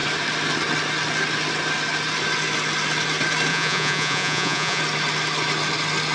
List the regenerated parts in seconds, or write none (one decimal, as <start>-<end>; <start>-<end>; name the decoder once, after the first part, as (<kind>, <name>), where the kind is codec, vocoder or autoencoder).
3.5-4.8 (vocoder, Vocos)